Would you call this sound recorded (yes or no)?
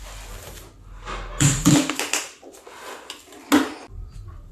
yes